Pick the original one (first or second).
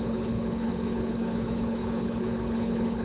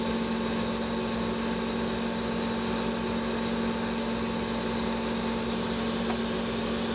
second